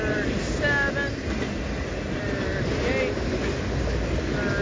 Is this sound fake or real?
real